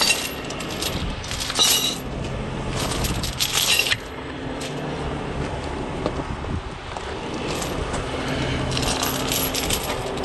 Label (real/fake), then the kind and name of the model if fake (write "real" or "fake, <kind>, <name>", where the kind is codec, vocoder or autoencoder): real